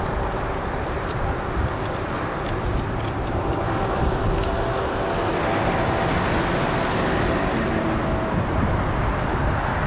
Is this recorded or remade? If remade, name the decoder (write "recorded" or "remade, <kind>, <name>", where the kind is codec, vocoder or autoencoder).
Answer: recorded